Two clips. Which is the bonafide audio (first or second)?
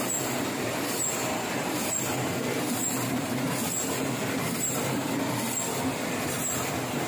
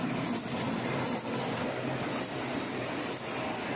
second